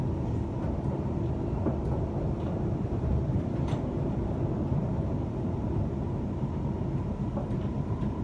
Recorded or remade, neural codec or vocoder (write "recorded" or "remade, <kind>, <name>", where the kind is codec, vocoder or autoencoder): recorded